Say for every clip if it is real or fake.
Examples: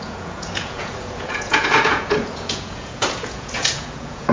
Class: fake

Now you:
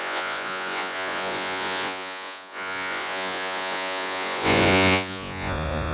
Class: fake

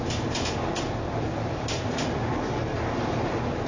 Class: real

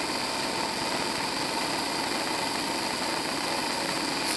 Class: real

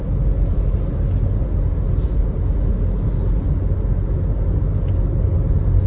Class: real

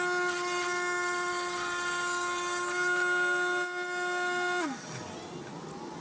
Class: real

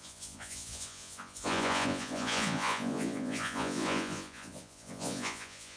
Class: fake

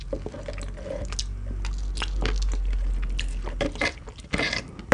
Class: real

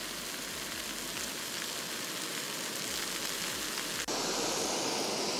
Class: real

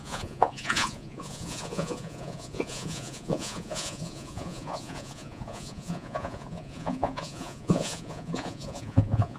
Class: fake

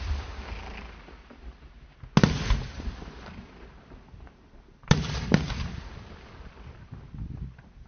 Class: real